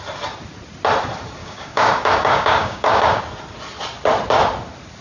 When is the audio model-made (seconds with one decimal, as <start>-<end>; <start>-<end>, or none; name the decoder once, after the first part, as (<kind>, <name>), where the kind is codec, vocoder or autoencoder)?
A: 1.4-3.2 (codec, DAC)